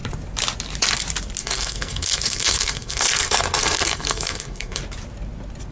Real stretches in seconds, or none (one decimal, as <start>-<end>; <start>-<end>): 0.0-1.4; 4.8-5.7